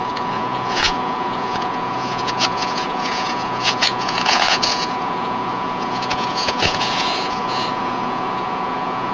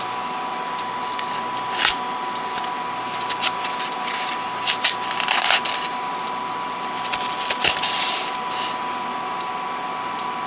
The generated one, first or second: first